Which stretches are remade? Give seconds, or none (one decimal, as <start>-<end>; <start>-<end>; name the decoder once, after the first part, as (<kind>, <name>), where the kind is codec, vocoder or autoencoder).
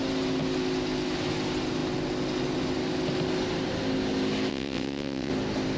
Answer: 4.5-5.3 (vocoder, WaveNeXt)